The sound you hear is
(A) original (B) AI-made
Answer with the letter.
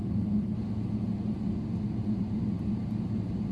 A